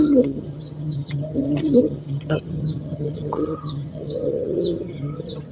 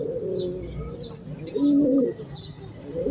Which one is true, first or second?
second